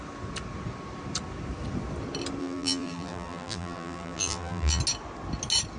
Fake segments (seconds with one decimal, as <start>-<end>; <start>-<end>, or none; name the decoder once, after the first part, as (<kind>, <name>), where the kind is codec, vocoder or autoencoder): 2.4-4.8 (vocoder, BigVGAN v2)